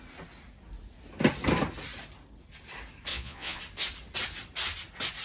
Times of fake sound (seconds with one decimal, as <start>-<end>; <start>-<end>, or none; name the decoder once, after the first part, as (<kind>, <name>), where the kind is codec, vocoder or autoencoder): 3.1-3.6 (vocoder, Vocos)